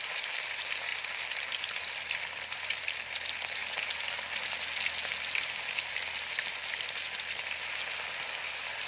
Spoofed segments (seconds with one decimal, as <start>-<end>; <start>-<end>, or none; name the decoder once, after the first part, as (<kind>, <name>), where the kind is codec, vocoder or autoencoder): 0.9-1.5 (vocoder, BigVGAN v2)